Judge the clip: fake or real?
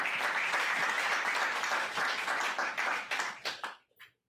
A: real